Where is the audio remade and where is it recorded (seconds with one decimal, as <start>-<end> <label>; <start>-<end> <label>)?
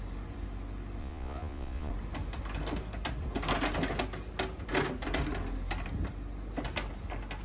0.0-1.0 recorded; 1.0-1.9 remade; 1.9-7.4 recorded